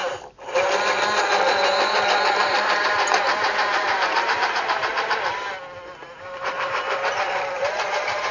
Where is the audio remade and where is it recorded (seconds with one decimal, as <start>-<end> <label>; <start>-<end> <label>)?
0.0-2.4 recorded; 2.4-4.9 remade; 4.9-6.0 recorded; 6.0-8.3 remade

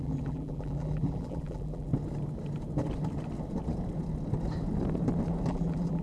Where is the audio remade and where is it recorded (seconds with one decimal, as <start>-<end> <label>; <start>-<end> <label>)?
0.0-1.9 remade; 1.9-5.5 recorded; 5.5-6.0 remade

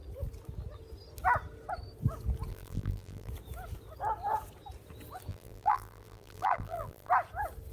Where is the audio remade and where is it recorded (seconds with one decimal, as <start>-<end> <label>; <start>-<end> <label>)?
0.0-2.5 recorded; 2.5-3.3 remade; 3.3-5.3 recorded; 5.3-7.1 remade; 7.1-7.7 recorded

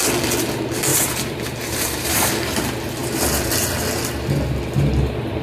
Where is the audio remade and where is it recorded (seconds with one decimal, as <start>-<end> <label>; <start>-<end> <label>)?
0.0-0.9 recorded; 0.9-2.2 remade; 2.2-5.4 recorded